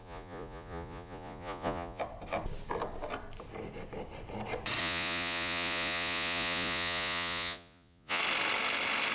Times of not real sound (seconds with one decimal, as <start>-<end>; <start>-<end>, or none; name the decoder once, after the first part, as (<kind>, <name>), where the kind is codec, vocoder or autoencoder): 0.0-2.0 (vocoder, Vocos); 4.8-8.2